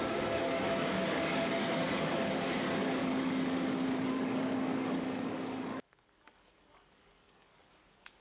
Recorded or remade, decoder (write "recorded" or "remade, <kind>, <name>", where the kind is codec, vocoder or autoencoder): remade, codec, DAC